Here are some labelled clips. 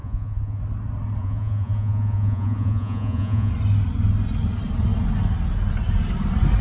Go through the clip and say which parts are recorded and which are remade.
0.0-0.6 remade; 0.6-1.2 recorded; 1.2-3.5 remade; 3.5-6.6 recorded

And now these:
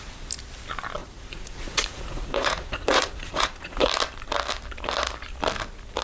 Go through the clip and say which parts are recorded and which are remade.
0.0-1.0 recorded; 1.0-3.9 remade; 3.9-6.0 recorded